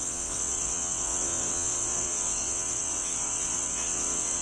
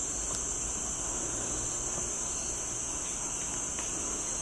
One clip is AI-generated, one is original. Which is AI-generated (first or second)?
first